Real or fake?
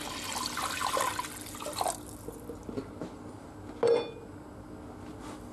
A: real